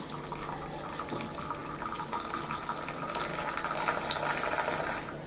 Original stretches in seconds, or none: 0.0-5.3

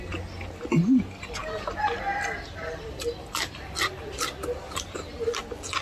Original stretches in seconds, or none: 0.0-1.4; 4.2-5.8

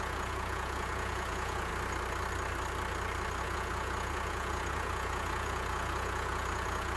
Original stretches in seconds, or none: 1.7-3.4

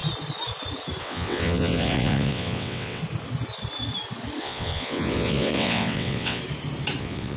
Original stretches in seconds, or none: 0.0-1.0; 3.0-4.4; 6.4-7.0

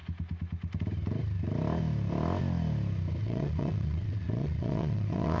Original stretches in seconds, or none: 0.0-3.2

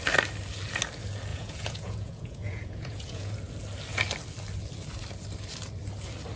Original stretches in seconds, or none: 0.0-1.3; 3.3-6.4

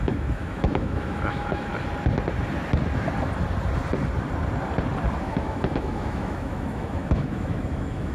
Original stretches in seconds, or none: 1.7-5.2

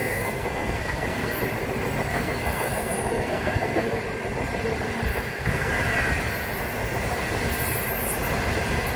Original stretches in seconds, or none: 1.4-2.1; 4.0-5.1; 5.7-9.0